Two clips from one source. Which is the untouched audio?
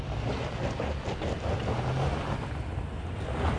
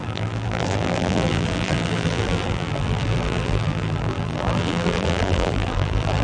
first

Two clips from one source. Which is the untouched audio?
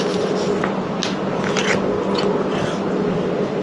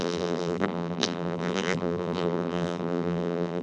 first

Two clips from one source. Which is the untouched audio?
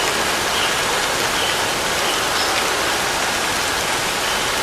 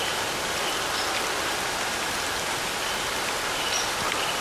first